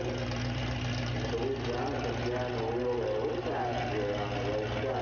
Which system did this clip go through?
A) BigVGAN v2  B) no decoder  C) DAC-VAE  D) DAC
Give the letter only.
B